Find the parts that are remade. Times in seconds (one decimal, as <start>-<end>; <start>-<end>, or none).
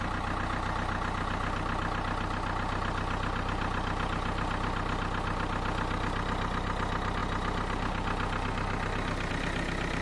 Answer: none